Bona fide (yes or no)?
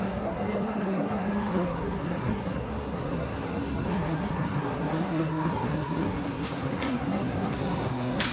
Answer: no